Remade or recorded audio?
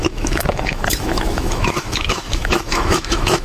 remade